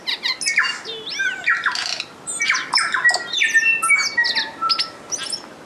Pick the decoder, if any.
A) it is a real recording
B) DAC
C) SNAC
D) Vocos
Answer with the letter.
A